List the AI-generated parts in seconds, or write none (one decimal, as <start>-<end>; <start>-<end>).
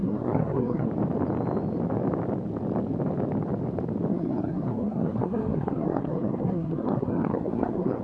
0.0-0.9; 4.1-8.0